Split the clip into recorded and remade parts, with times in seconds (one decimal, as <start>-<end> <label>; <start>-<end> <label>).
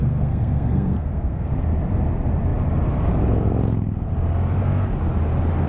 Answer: 0.0-1.5 remade; 1.5-5.7 recorded